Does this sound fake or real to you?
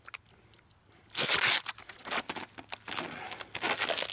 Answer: real